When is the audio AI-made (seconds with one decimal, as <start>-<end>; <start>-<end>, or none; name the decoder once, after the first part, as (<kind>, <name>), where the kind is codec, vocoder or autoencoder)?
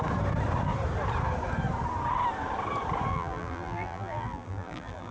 3.1-5.1 (vocoder, BigVGAN v2)